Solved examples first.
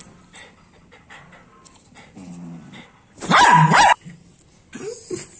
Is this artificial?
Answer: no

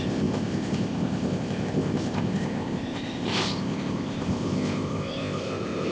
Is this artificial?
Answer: yes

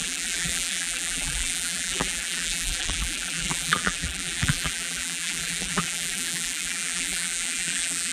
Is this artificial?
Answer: yes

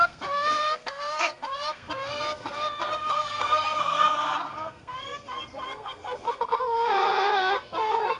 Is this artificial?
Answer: yes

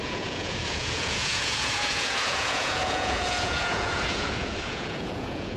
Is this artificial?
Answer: yes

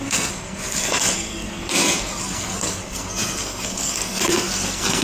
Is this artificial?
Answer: yes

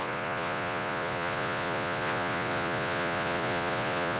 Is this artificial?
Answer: yes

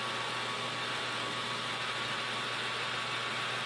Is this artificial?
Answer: no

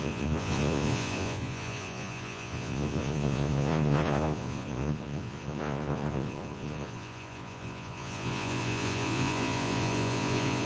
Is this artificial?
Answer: yes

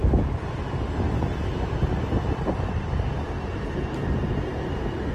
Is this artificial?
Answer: no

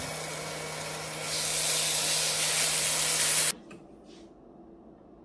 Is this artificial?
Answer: no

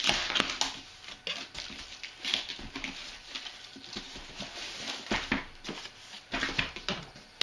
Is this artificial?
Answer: no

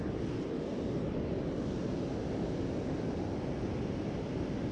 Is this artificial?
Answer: no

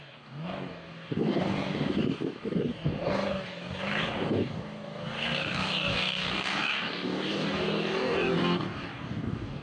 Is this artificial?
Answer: yes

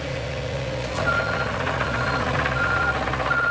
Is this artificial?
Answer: yes